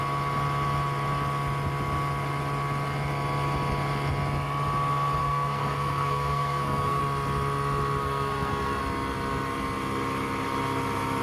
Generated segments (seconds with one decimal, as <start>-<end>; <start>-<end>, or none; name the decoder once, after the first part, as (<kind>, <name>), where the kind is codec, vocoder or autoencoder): 5.2-7.0 (codec, SNAC); 8.0-8.8